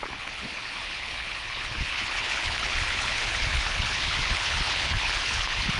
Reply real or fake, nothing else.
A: fake